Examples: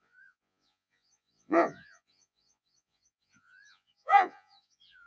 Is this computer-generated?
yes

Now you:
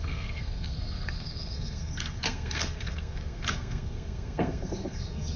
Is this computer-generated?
yes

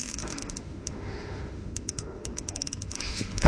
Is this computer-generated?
yes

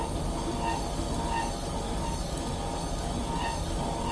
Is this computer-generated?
no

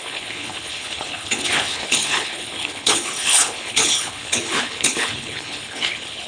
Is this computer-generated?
yes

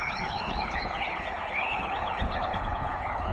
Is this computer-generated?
yes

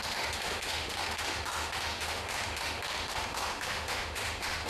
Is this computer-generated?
yes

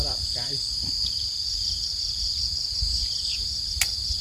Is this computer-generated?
no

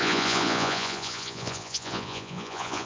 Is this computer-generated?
yes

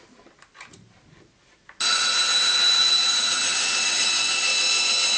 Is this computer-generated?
no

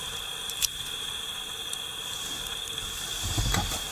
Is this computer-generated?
yes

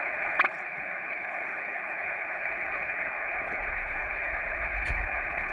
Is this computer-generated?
yes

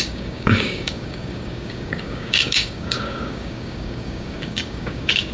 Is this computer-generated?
yes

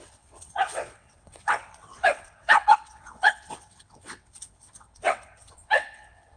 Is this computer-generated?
yes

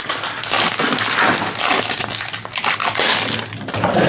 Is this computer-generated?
no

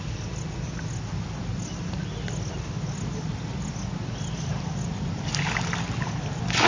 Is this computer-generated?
no